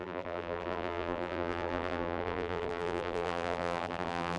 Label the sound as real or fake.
fake